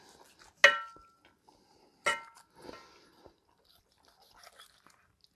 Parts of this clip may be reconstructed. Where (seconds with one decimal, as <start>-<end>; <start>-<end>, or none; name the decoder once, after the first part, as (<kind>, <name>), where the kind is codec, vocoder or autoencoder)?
none